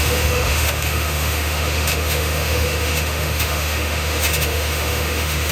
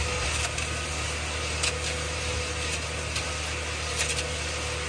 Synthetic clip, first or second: first